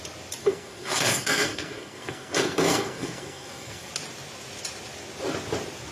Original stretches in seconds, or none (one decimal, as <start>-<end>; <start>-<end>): 0.0-0.4; 3.9-5.9